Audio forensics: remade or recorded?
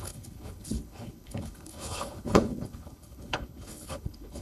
remade